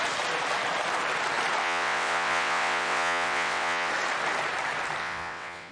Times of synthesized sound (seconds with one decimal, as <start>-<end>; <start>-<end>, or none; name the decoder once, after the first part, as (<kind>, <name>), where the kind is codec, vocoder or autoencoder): 1.6-3.9 (vocoder, WaveNeXt); 5.0-5.7